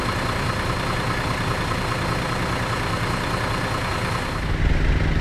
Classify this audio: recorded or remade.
recorded